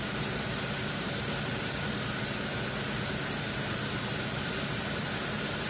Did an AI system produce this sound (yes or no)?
no